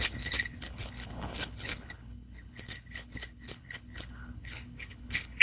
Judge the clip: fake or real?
fake